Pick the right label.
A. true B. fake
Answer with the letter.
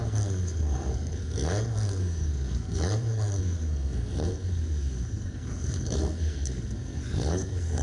B